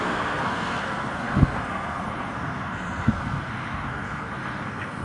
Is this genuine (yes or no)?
no